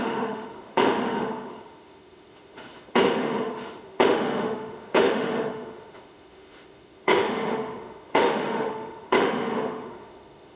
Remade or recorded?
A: remade